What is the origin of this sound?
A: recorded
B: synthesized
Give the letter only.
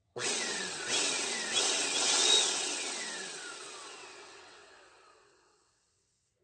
B